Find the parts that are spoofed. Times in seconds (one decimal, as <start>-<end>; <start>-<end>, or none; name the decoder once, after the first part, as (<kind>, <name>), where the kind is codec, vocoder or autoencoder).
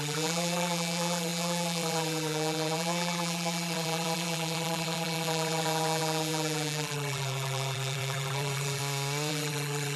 0.0-8.8 (vocoder, BigVGAN v2); 9.3-10.0